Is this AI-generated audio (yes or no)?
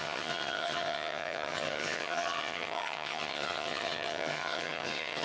yes